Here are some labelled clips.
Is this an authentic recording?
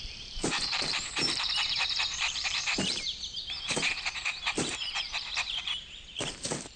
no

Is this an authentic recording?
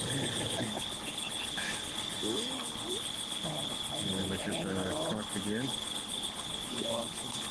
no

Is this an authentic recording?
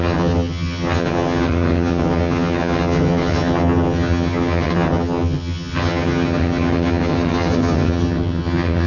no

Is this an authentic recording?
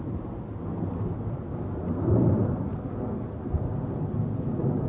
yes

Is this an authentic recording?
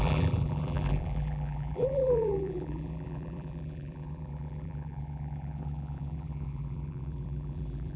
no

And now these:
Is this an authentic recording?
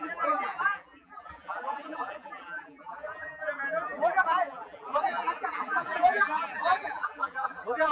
no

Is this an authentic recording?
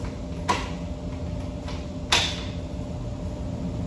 yes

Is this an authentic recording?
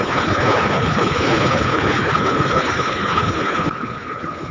no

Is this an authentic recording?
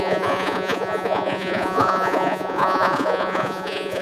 no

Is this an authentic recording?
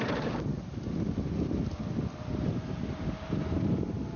yes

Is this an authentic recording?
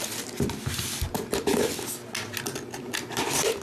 yes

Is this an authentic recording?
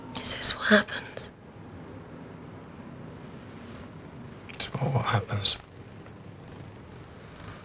yes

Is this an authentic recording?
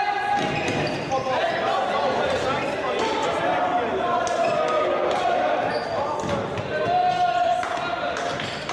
yes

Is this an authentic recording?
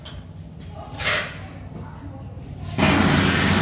yes